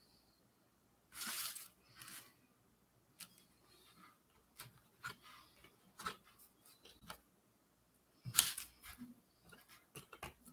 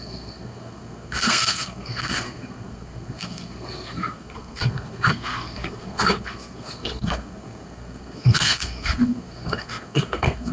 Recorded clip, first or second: first